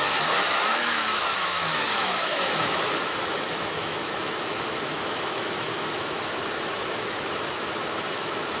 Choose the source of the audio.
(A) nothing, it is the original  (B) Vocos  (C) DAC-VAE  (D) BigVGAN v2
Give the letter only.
C